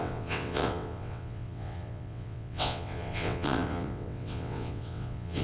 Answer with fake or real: fake